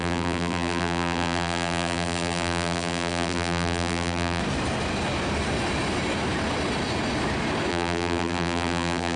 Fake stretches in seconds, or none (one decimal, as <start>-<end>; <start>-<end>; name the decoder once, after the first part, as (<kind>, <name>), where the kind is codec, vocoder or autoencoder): 0.0-4.4 (vocoder, BigVGAN v2); 7.7-9.2